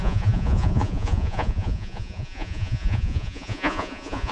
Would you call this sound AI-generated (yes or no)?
yes